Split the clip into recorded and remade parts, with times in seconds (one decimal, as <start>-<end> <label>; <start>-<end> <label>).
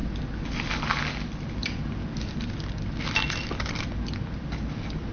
0.0-5.1 recorded